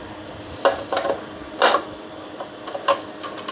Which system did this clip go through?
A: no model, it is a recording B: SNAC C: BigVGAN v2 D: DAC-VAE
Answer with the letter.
A